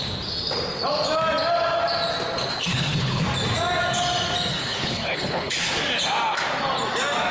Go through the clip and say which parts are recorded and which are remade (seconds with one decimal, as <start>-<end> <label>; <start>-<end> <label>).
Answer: 0.0-2.5 recorded; 2.5-3.2 remade; 3.2-4.5 recorded; 4.5-5.8 remade; 5.8-7.3 recorded